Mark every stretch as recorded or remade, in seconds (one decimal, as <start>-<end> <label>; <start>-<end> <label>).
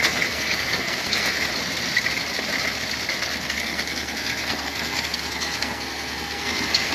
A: 0.0-1.5 remade; 1.5-3.4 recorded; 3.4-6.9 remade